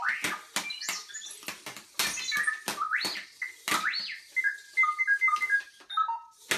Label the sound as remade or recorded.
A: recorded